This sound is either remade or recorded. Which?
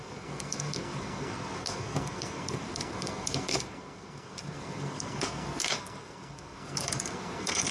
remade